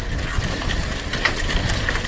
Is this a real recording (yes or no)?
yes